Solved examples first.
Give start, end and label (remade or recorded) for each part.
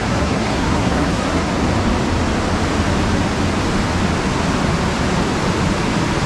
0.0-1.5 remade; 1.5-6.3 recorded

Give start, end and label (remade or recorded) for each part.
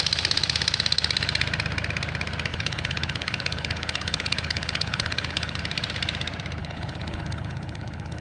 0.0-2.5 recorded; 2.5-5.6 remade; 5.6-6.6 recorded; 6.6-8.2 remade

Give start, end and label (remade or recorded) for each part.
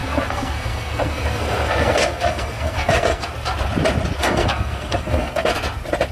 0.0-3.3 remade; 3.3-4.2 recorded; 4.2-5.5 remade; 5.5-6.1 recorded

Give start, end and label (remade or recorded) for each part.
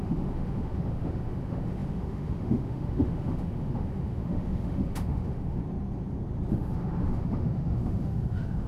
0.0-5.6 remade; 5.6-6.5 recorded; 6.5-8.7 remade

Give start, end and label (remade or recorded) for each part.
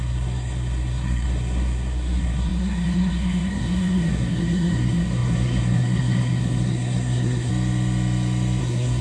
0.0-7.5 remade; 7.5-8.6 recorded; 8.6-9.0 remade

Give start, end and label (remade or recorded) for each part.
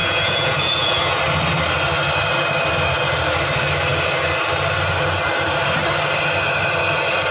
0.0-1.2 remade; 1.2-7.3 recorded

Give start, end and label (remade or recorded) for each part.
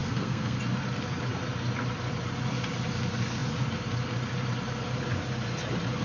0.0-0.6 remade; 0.6-6.0 recorded